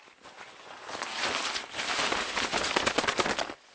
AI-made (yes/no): no